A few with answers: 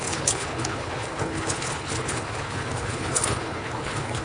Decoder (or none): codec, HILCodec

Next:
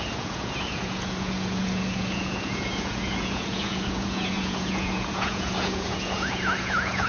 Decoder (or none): vocoder, Vocos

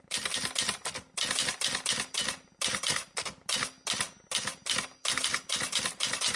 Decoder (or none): none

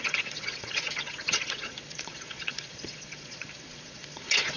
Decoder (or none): vocoder, Vocos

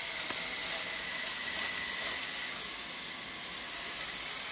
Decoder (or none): none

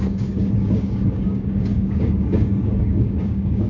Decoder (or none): codec, DAC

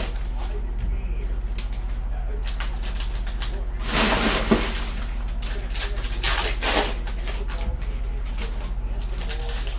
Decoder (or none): none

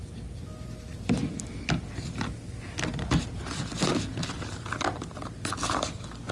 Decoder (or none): none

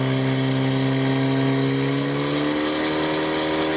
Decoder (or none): none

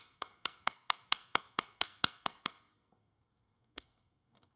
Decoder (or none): codec, SNAC